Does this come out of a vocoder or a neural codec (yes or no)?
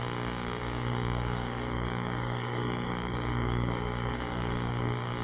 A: yes